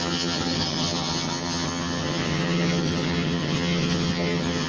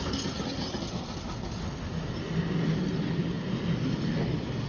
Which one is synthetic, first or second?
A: first